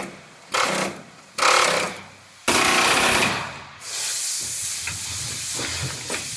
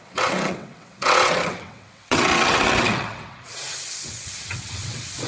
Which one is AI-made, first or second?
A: second